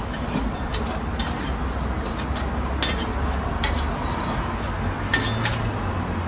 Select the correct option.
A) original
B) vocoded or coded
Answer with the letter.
A